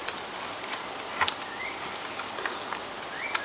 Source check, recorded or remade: remade